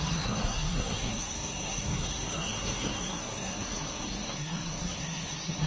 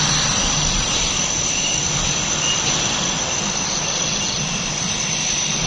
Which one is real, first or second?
second